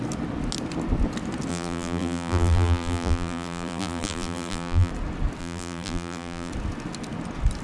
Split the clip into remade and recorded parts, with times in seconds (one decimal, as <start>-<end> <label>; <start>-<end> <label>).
0.0-1.5 recorded; 1.5-4.9 remade; 4.9-5.4 recorded; 5.4-6.5 remade; 6.5-7.6 recorded